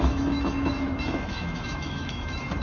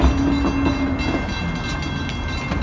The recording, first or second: second